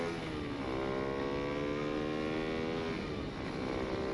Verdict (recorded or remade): recorded